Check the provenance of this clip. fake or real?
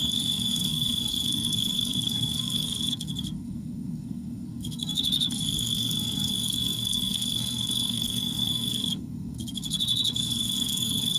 fake